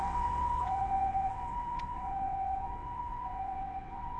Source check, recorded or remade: remade